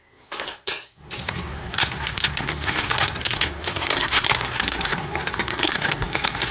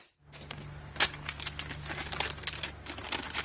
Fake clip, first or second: first